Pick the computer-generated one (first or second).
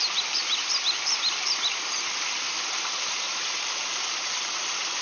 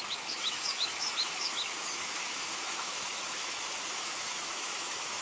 second